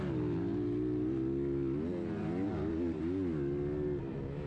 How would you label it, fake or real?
real